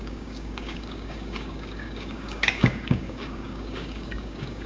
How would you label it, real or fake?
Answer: fake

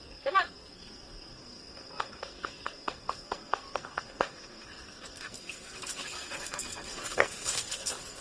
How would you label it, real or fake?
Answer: fake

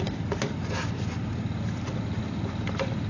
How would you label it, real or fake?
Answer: real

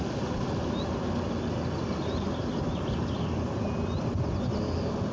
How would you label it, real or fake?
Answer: real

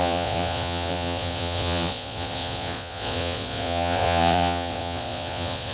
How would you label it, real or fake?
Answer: fake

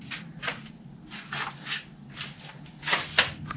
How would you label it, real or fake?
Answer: real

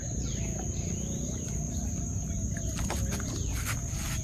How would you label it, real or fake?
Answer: real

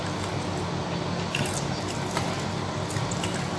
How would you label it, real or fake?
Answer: real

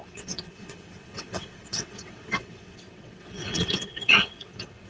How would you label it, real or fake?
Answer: fake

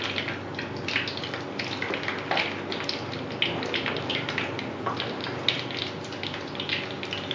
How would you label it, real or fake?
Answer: real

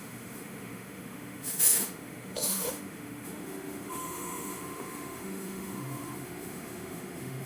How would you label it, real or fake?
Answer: fake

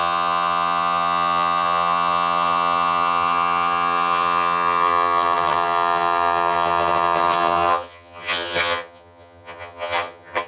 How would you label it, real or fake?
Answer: fake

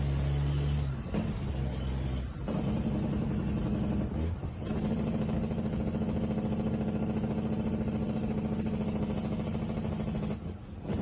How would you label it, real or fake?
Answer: real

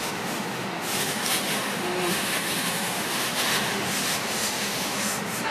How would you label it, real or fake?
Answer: fake